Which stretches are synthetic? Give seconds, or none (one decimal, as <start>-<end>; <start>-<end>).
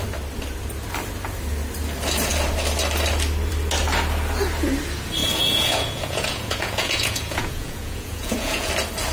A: 5.2-8.7